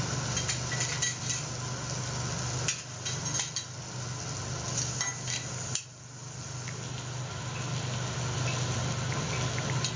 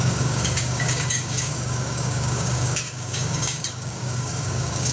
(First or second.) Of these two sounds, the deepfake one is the second